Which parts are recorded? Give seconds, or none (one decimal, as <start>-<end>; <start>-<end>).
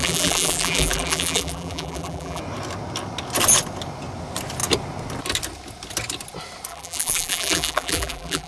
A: 2.4-6.7